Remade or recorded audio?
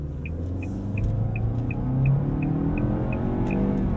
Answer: recorded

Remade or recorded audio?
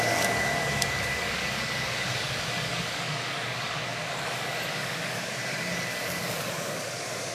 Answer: remade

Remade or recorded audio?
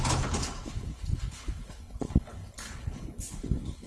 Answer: remade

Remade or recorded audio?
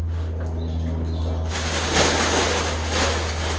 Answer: recorded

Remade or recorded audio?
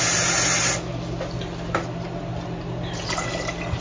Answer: recorded